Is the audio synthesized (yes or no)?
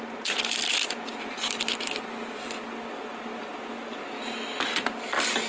no